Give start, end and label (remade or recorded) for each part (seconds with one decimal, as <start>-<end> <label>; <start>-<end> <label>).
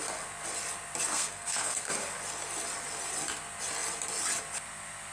0.0-1.1 recorded; 1.1-1.9 remade; 1.9-5.1 recorded